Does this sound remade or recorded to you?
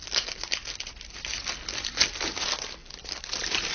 recorded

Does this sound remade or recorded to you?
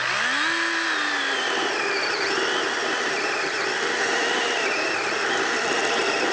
recorded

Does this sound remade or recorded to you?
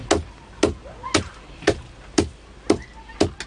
recorded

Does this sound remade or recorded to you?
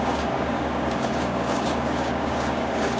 remade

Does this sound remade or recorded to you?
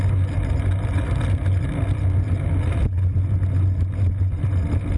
recorded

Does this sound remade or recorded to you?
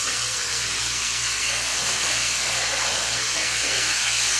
remade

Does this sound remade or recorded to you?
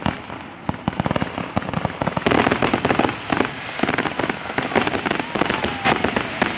recorded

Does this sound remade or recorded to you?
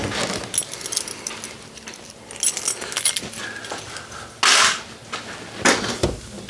recorded